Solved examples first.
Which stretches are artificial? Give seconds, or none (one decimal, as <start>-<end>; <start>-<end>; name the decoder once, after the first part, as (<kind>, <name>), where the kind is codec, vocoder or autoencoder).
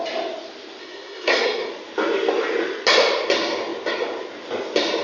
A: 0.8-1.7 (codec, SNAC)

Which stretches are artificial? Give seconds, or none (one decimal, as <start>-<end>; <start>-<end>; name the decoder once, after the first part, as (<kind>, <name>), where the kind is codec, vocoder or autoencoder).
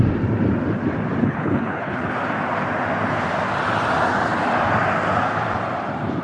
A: 1.2-2.1 (codec, HILCodec)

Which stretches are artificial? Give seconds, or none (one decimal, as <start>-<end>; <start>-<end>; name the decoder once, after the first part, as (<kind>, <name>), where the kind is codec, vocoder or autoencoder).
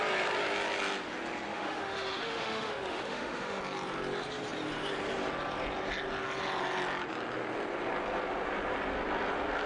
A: 1.5-3.6 (autoencoder, DAC-VAE)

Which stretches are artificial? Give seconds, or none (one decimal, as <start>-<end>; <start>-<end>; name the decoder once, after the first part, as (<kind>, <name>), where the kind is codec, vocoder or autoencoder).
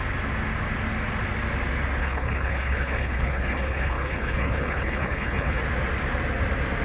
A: 2.0-5.6 (codec, HILCodec)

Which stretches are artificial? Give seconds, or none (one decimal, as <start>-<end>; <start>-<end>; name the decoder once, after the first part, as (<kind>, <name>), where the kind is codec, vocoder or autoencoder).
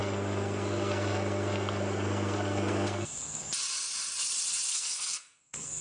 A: 0.0-3.5 (codec, SNAC); 4.7-5.8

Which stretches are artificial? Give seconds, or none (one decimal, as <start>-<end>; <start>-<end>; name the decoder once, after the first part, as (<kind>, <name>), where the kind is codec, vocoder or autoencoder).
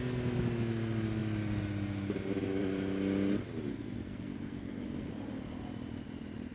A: 3.7-5.1 (codec, SNAC)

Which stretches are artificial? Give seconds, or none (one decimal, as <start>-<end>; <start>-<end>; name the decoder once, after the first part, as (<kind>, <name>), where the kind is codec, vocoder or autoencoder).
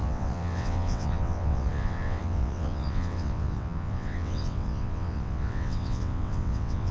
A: 0.0-6.9 (vocoder, WaveNeXt)